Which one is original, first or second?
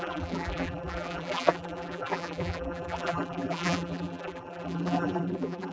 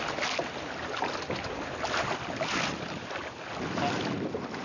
second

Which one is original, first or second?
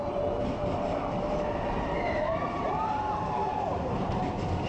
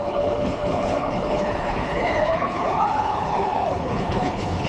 first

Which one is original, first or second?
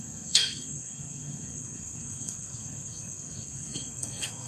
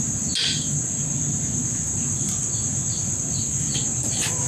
second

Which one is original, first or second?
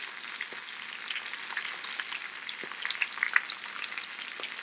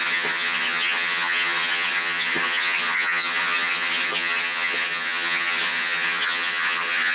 first